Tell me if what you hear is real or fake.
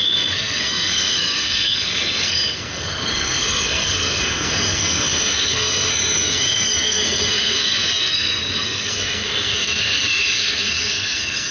fake